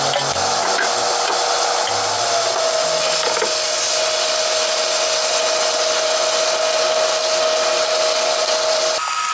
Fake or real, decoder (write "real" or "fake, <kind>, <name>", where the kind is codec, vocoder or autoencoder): real